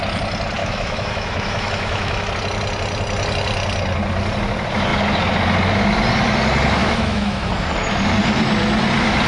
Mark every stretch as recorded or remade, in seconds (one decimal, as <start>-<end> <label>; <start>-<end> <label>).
0.0-0.6 recorded; 0.6-2.3 remade; 2.3-6.8 recorded; 6.8-7.5 remade; 7.5-9.3 recorded